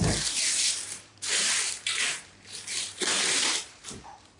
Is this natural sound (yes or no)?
no